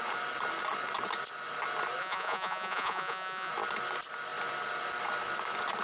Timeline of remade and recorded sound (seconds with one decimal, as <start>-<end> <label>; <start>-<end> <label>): 0.0-2.0 recorded; 2.0-3.5 remade; 3.5-5.8 recorded